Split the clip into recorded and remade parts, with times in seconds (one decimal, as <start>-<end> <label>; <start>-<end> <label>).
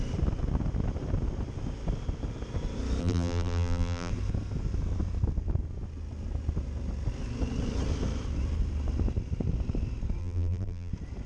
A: 0.0-3.0 recorded; 3.0-4.1 remade; 4.1-10.2 recorded; 10.2-10.9 remade; 10.9-11.3 recorded